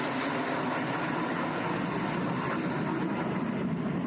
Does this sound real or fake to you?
real